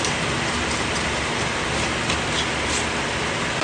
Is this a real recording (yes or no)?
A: yes